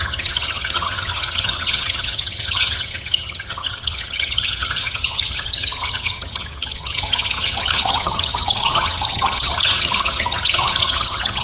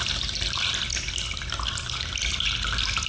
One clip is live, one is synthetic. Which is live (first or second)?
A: second